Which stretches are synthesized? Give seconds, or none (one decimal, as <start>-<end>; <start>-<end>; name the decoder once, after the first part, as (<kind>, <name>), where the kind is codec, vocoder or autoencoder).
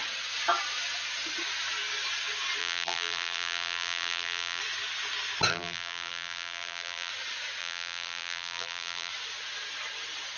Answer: 2.6-4.6 (vocoder, BigVGAN v2); 5.5-7.1; 7.6-9.1